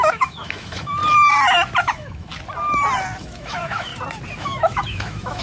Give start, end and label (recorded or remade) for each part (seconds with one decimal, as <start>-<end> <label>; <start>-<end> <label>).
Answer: 0.0-1.0 remade; 1.0-1.8 recorded; 1.8-2.3 remade; 2.3-3.2 recorded; 3.2-3.9 remade; 3.9-4.4 recorded; 4.4-5.4 remade